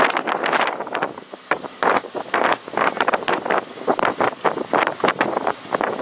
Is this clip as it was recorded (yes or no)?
yes